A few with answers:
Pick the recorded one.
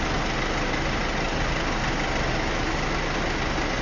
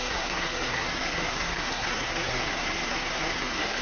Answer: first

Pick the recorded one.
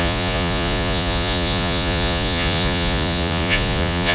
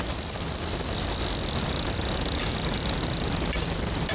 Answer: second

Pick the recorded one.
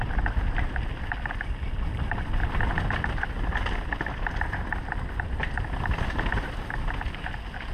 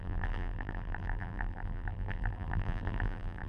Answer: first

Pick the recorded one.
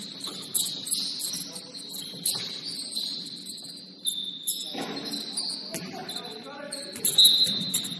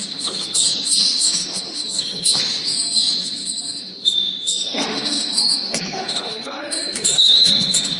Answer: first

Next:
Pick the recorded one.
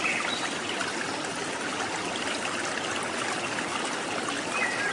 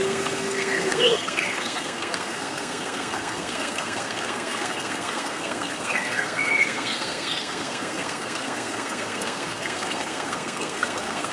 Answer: first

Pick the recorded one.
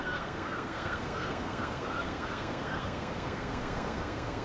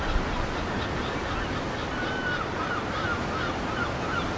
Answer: second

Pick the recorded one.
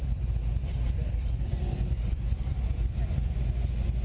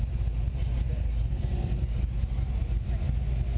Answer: second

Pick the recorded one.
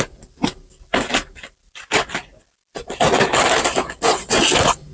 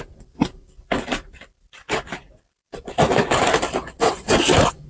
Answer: first